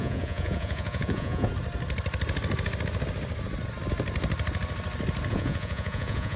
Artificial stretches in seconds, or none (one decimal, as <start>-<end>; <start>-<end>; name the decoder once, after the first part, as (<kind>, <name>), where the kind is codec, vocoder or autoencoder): 0.0-1.5 (vocoder, Vocos); 5.3-6.4